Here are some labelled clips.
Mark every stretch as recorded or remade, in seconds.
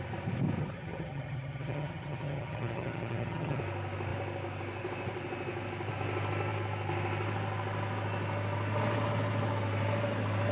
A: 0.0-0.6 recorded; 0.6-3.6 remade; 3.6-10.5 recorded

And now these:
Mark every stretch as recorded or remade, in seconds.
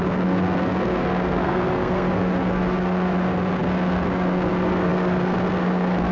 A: 0.0-6.1 remade